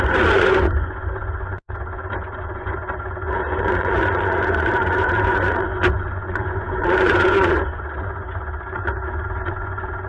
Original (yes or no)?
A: no